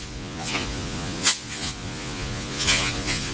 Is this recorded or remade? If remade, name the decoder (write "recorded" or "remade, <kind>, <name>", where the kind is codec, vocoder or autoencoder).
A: remade, vocoder, Vocos